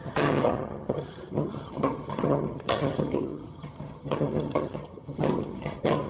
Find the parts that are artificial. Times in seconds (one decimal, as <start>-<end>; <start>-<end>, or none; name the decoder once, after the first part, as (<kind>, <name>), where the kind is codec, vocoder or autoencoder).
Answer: 0.0-6.1 (vocoder, HiFi-GAN)